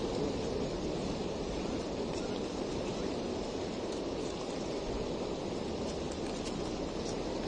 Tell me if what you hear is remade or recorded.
recorded